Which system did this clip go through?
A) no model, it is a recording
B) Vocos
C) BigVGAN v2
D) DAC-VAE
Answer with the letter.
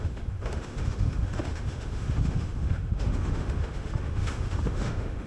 D